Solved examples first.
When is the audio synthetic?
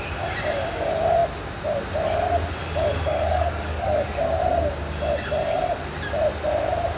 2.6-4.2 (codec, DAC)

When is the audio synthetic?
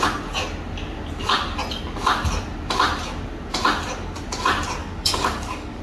4.8-5.8 (codec, DAC)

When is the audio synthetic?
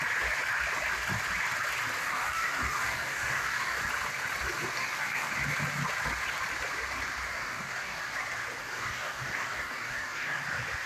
2.0-3.8 (codec, DAC); 4.8-5.3; 7.3-8.1; 8.6-10.4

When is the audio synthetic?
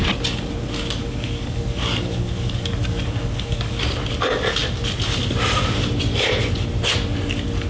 1.0-3.8 (codec, DAC)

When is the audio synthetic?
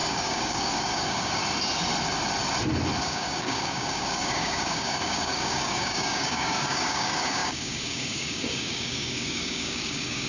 0.0-1.4 (codec, DAC); 3.0-10.3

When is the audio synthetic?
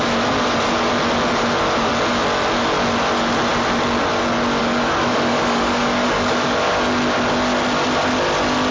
4.6-6.7 (codec, DAC)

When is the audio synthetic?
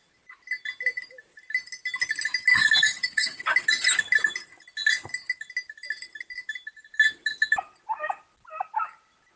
2.5-3.4 (codec, DAC)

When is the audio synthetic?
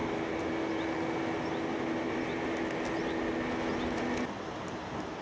none